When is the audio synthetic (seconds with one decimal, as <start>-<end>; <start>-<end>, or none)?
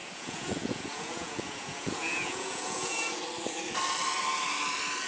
0.0-3.1